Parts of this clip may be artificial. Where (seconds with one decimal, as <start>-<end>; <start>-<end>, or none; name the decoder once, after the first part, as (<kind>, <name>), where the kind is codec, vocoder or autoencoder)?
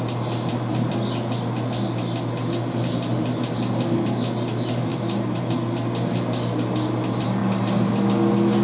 4.9-5.4 (vocoder, BigVGAN v2); 7.4-7.9